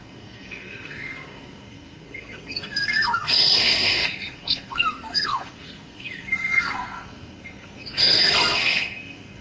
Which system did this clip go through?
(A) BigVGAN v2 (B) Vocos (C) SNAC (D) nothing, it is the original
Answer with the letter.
C